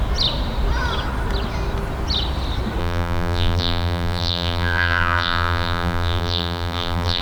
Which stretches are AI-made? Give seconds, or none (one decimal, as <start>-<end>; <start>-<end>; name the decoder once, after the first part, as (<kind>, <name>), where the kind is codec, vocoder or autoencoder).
2.8-7.2 (vocoder, BigVGAN v2)